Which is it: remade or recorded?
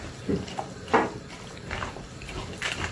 recorded